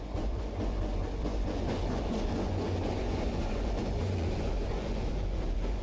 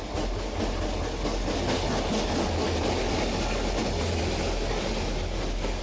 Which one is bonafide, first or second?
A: second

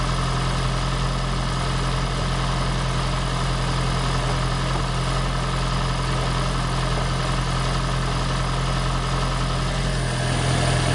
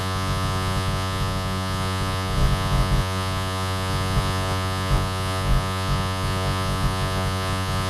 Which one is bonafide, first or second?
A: first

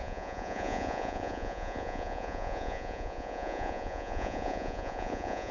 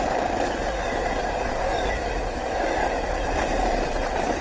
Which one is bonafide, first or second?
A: second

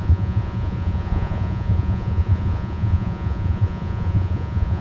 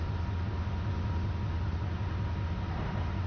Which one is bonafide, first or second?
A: second